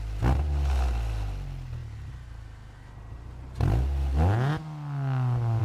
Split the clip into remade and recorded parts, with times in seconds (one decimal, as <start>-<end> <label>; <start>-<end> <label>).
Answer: 0.0-5.6 recorded